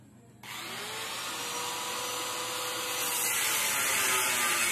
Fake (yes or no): no